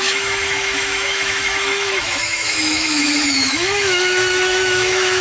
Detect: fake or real fake